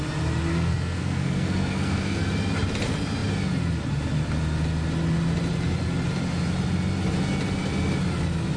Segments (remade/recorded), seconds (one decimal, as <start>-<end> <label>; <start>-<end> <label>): 0.0-0.5 recorded; 0.5-2.2 remade; 2.2-8.6 recorded